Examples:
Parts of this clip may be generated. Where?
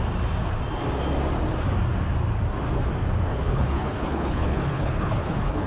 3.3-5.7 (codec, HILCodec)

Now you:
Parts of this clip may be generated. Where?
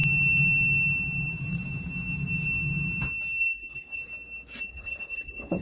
3.4-4.0 (codec, HILCodec); 4.6-5.6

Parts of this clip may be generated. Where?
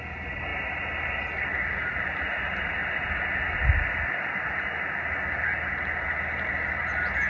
none